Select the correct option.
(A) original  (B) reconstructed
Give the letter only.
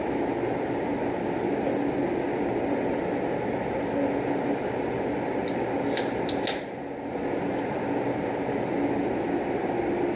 A